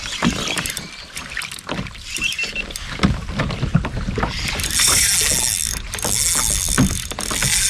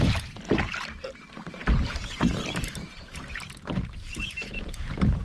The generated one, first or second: second